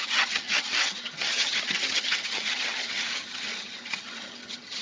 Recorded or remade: remade